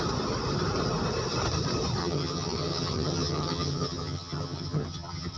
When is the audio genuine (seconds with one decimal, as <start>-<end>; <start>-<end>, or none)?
0.0-2.0

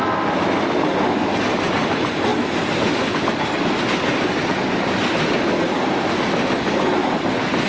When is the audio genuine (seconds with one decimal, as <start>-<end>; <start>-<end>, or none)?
0.0-7.7

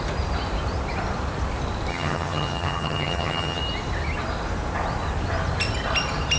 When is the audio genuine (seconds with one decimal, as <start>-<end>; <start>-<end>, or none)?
0.0-1.9; 3.6-6.4

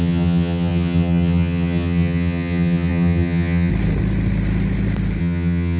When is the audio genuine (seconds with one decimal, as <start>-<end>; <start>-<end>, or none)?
3.7-5.2

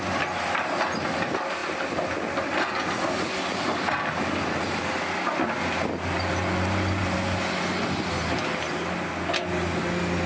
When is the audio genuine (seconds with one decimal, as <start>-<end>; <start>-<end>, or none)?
0.0-10.3